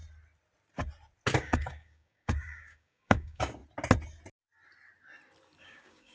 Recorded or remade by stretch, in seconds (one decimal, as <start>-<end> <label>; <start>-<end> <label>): 0.0-1.4 recorded; 1.4-3.6 remade; 3.6-5.6 recorded; 5.6-6.1 remade